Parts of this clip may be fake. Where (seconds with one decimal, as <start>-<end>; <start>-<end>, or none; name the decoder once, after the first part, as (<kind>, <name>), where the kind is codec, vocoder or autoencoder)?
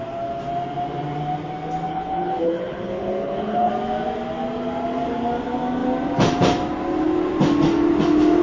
1.9-3.7 (codec, HILCodec)